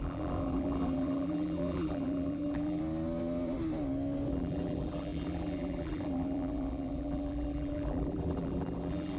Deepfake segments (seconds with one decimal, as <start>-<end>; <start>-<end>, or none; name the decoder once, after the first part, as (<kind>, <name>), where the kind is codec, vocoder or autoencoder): 0.0-2.8 (vocoder, BigVGAN v2); 4.3-9.2